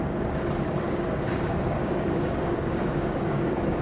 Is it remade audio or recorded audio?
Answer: remade